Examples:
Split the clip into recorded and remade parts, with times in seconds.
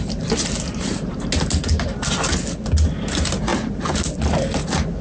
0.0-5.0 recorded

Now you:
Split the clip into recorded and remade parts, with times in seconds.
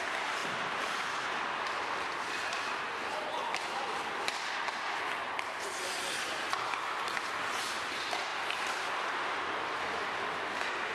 0.0-0.4 recorded; 0.4-1.1 remade; 1.1-10.9 recorded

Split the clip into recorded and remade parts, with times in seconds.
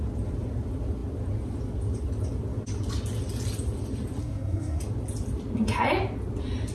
0.0-4.2 recorded; 4.2-4.8 remade; 4.8-6.7 recorded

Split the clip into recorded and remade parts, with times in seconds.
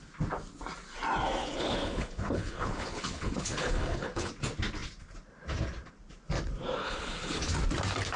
0.0-1.4 recorded; 1.4-4.3 remade; 4.3-6.8 recorded; 6.8-7.4 remade; 7.4-8.2 recorded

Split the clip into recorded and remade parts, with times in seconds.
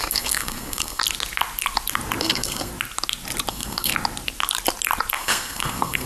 0.0-1.0 remade; 1.0-2.2 recorded; 2.2-2.7 remade; 2.7-3.5 recorded; 3.5-3.9 remade; 3.9-5.1 recorded; 5.1-6.1 remade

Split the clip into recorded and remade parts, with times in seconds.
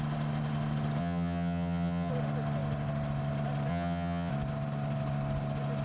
0.0-1.0 recorded; 1.0-2.1 remade; 2.1-3.7 recorded; 3.7-4.3 remade; 4.3-5.8 recorded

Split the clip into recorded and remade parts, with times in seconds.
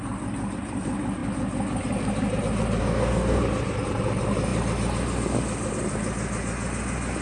0.0-2.8 recorded; 2.8-3.4 remade; 3.4-7.2 recorded